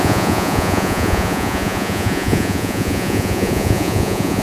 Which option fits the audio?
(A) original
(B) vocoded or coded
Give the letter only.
B